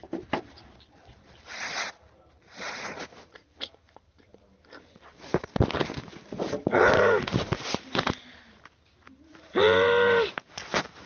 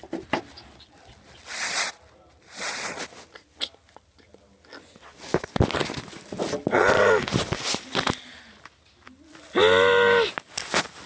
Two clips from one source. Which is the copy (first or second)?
first